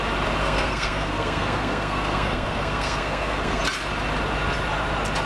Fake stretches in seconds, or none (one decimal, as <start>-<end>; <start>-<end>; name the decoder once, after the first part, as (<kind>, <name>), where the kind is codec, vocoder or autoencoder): 0.4-3.6 (codec, SNAC)